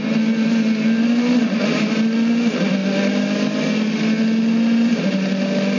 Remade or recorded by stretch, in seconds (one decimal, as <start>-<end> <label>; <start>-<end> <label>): 0.0-5.8 recorded